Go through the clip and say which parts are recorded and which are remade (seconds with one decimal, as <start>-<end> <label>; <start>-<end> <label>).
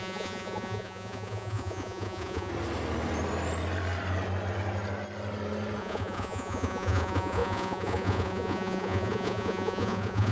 0.0-2.5 remade; 2.5-5.8 recorded; 5.8-10.3 remade